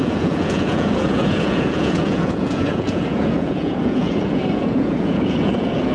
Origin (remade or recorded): remade